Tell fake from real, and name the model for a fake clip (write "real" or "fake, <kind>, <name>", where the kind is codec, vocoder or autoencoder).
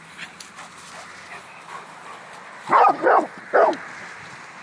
real